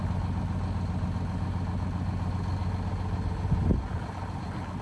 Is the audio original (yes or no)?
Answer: yes